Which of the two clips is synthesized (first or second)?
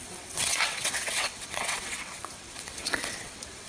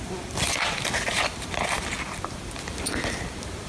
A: first